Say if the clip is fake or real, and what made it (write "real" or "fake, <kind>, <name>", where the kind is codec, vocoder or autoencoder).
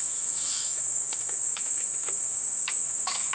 fake, autoencoder, DAC-VAE